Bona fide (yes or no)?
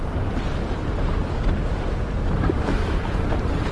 yes